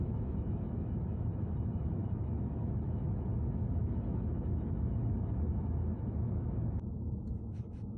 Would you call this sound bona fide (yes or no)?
no